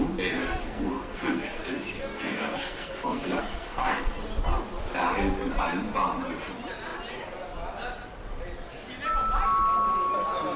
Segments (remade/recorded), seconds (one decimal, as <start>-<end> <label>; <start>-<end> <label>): 0.0-0.4 recorded; 0.4-4.2 remade; 4.2-10.6 recorded